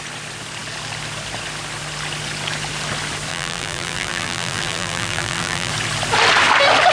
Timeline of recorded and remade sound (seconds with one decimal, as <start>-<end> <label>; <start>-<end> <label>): 0.0-3.3 recorded; 3.3-5.7 remade; 5.7-6.9 recorded